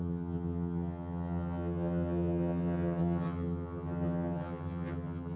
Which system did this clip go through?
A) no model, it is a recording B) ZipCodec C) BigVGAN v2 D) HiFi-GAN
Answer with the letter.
D